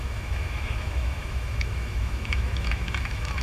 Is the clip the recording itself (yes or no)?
no